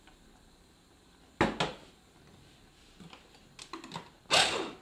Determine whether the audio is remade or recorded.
recorded